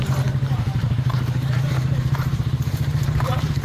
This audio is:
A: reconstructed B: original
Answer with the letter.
A